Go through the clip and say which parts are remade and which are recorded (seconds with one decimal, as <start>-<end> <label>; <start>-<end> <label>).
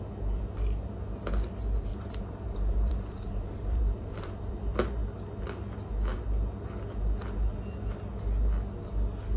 0.0-1.9 recorded; 1.9-4.5 remade; 4.5-9.4 recorded